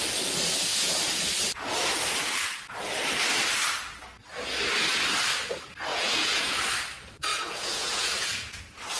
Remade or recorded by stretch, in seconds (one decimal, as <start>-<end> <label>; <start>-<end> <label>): 0.0-0.7 recorded; 0.7-1.2 remade; 1.2-5.9 recorded; 5.9-6.5 remade; 6.5-7.3 recorded; 7.3-8.6 remade; 8.6-9.0 recorded